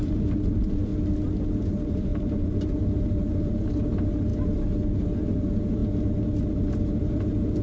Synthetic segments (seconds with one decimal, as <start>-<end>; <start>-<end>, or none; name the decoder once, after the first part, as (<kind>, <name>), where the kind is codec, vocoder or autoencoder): 0.0-0.9 (vocoder, BigVGAN v2); 1.6-4.3; 5.0-7.6